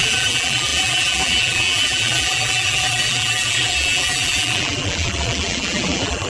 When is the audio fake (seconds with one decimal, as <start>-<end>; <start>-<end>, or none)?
0.0-6.3